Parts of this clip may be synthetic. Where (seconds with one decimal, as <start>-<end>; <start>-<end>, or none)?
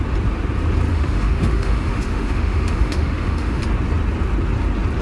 0.9-3.6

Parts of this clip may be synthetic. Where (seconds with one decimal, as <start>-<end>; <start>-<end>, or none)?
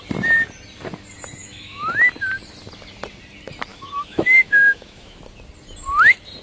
1.4-2.1; 3.7-5.2